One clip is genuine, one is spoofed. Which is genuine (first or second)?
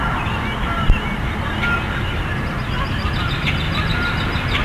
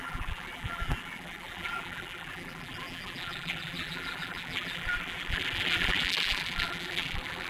first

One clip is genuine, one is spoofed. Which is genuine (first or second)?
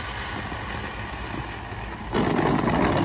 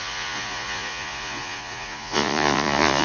first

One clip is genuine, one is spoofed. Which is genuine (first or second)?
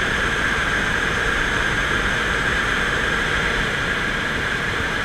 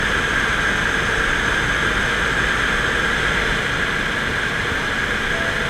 second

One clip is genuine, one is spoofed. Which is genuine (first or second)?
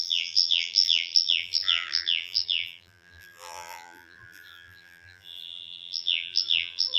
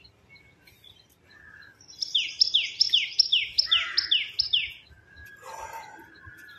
second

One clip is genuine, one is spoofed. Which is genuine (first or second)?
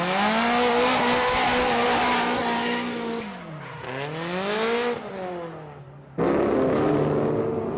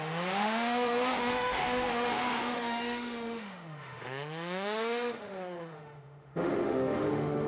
first